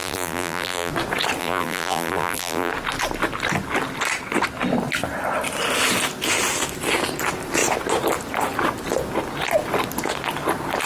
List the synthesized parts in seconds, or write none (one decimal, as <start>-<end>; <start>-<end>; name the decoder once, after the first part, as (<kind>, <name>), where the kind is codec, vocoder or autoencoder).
0.0-0.9 (vocoder, BigVGAN v2); 1.4-2.7